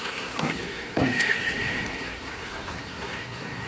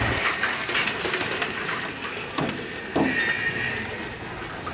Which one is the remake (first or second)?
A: first